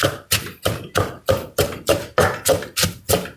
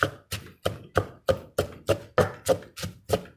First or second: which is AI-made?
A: first